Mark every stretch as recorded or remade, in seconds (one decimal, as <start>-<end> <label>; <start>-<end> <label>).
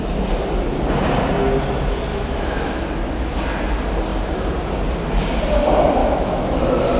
0.0-2.1 recorded; 2.1-2.8 remade; 2.8-6.0 recorded; 6.0-6.6 remade; 6.6-7.0 recorded